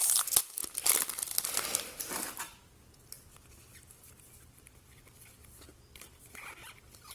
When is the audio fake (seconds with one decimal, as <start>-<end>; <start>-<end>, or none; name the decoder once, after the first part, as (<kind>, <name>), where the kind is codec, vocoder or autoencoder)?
0.0-7.1 (vocoder, BigVGAN v2)